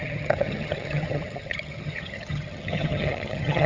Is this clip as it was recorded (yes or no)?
no